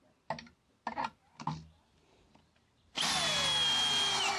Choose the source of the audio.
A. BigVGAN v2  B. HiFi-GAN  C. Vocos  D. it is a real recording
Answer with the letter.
D